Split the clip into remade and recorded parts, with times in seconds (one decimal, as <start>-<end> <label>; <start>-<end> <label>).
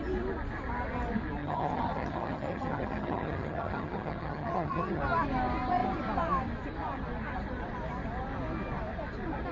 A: 0.0-1.4 recorded; 1.4-5.0 remade; 5.0-9.5 recorded